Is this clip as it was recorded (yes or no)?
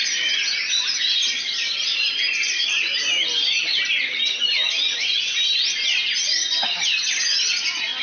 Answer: yes